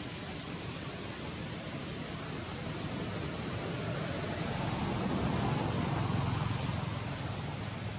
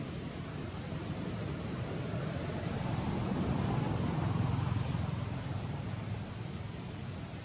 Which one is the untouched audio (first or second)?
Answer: first